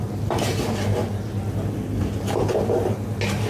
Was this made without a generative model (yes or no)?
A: yes